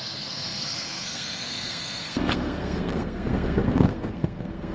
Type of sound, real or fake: fake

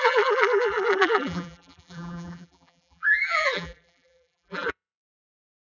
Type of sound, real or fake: fake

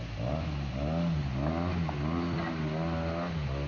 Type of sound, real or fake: real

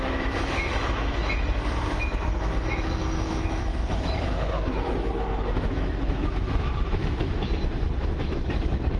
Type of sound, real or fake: fake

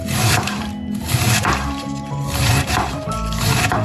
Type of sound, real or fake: fake